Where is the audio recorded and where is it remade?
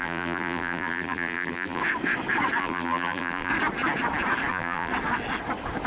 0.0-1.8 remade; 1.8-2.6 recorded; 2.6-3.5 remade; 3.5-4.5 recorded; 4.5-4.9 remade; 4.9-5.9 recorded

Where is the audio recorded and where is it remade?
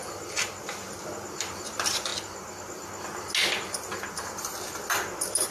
0.0-1.5 recorded; 1.5-2.1 remade; 2.1-5.5 recorded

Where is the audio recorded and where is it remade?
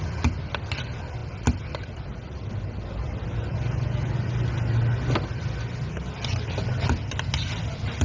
0.0-8.0 recorded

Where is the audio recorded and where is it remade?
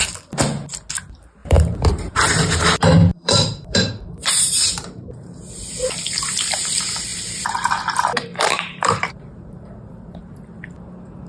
0.0-1.4 recorded; 1.4-2.4 remade; 2.4-3.1 recorded; 3.1-5.4 remade; 5.4-7.1 recorded; 7.1-7.8 remade; 7.8-8.3 recorded; 8.3-10.2 remade; 10.2-11.3 recorded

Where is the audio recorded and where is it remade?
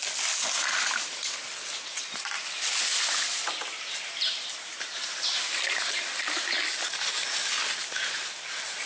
0.0-2.9 recorded; 2.9-6.2 remade; 6.2-8.9 recorded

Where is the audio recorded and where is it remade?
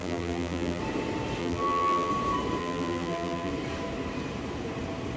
0.0-0.8 remade; 0.8-1.4 recorded; 1.4-2.1 remade; 2.1-2.6 recorded; 2.6-3.5 remade; 3.5-5.2 recorded